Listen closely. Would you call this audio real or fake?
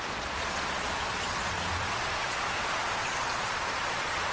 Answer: fake